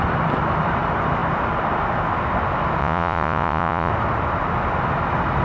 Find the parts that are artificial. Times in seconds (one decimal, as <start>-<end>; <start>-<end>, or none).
2.8-3.9